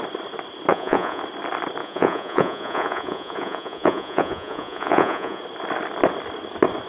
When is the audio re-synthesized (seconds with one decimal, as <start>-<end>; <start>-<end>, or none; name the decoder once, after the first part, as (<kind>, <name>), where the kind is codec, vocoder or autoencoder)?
0.7-1.2 (vocoder, Vocos); 1.8-5.4

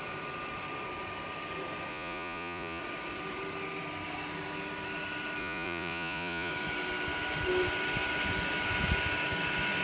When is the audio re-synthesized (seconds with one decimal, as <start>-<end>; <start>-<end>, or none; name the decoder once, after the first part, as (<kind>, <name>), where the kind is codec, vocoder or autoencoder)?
1.9-2.8 (vocoder, Vocos); 5.4-6.5